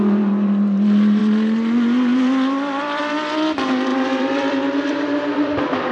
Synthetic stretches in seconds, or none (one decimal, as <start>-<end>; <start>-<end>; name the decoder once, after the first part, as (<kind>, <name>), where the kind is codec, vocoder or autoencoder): 1.2-3.0 (vocoder, BigVGAN v2); 3.9-5.9